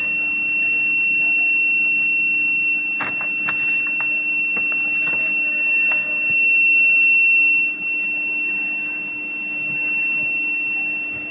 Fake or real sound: real